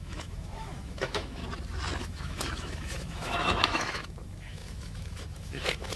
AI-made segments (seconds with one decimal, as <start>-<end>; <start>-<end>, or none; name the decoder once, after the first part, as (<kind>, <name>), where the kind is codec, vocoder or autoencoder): 0.0-1.4 (autoencoder, DAC-VAE); 2.0-6.0